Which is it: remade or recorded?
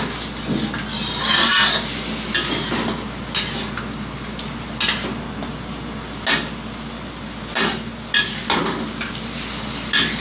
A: recorded